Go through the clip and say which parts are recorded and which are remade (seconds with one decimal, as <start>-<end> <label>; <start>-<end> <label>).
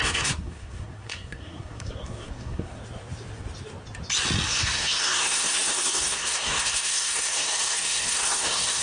0.0-2.8 remade; 2.8-4.5 recorded; 4.5-8.8 remade